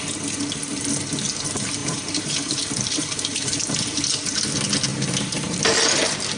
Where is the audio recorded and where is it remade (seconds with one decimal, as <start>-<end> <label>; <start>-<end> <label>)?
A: 0.0-1.8 recorded; 1.8-4.0 remade; 4.0-4.9 recorded; 4.9-5.6 remade; 5.6-6.4 recorded